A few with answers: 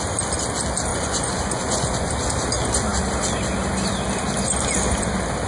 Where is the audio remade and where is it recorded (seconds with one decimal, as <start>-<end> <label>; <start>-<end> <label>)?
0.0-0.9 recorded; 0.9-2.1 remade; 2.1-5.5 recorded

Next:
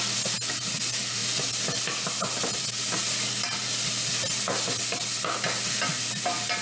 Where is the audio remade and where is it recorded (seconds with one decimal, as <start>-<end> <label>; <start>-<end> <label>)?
0.0-6.6 recorded

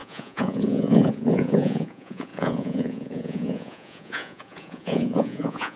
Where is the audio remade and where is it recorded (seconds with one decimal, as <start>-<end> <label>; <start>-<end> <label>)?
0.0-5.8 remade